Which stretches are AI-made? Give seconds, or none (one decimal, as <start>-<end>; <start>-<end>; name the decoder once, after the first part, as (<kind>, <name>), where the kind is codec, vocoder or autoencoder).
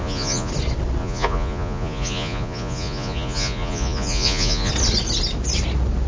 0.0-0.5 (vocoder, Vocos); 1.0-4.7